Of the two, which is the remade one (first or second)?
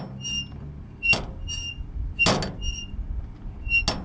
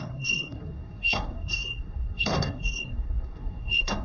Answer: second